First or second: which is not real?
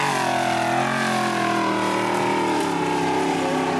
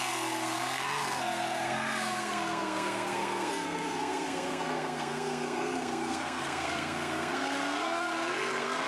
second